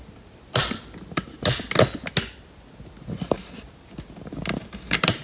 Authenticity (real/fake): real